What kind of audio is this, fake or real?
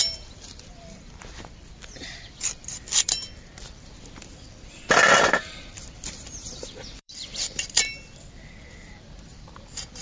fake